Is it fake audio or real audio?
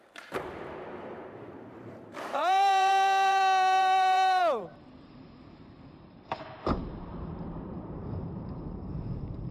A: fake